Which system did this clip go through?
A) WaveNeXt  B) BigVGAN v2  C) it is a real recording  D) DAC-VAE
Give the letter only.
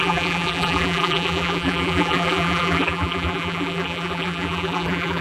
B